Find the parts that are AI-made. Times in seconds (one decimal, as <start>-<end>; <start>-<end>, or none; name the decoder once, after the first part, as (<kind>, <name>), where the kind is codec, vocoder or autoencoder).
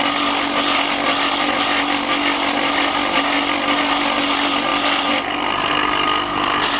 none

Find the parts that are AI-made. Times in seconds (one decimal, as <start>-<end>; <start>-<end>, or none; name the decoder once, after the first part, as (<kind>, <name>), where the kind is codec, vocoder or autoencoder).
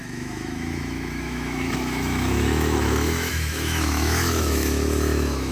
0.0-5.5 (autoencoder, DAC-VAE)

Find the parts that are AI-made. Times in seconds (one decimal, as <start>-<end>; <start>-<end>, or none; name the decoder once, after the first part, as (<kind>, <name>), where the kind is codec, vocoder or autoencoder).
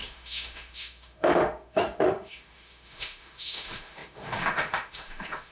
0.0-5.5 (autoencoder, DAC-VAE)